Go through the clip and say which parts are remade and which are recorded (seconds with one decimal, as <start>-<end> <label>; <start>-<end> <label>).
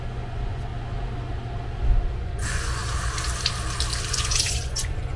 0.0-0.7 remade; 0.7-2.2 recorded; 2.2-2.8 remade; 2.8-4.1 recorded; 4.1-5.2 remade